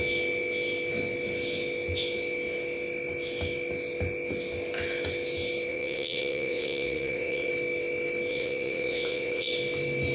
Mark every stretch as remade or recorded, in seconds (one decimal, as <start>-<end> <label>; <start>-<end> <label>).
0.0-5.7 recorded; 5.7-7.5 remade; 7.5-8.3 recorded; 8.3-9.5 remade; 9.5-10.1 recorded